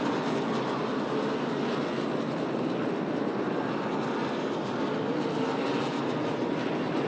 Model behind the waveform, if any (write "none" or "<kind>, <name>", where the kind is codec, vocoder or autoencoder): none